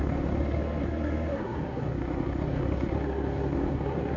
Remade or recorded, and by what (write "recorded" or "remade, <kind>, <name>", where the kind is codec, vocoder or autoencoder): remade, codec, SNAC